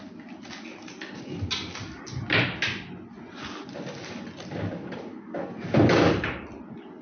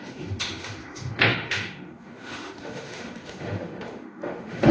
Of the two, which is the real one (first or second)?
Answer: first